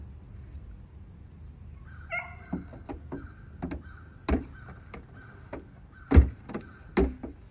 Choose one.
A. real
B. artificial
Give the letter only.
A